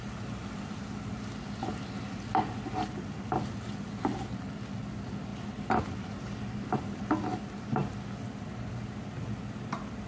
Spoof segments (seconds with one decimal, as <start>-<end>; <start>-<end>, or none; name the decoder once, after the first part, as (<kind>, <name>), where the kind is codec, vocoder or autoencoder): none